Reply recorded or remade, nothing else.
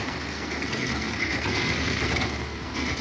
remade